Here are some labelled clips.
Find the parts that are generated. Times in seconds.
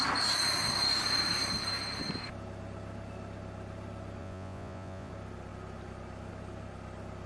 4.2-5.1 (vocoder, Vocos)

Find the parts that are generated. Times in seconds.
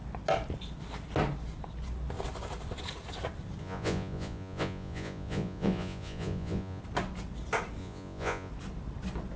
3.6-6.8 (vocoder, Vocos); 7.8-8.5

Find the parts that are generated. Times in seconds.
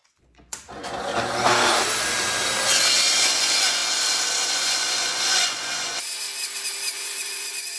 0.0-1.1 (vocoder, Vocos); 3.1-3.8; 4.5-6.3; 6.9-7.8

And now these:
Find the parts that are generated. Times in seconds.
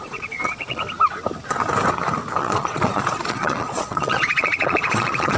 0.0-0.8 (vocoder, Vocos); 2.4-5.4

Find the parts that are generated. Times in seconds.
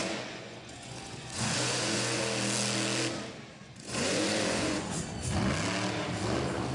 0.0-2.2 (vocoder, Vocos); 3.6-5.0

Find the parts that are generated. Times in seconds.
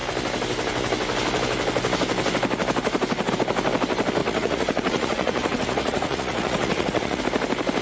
4.2-7.2 (vocoder, Vocos)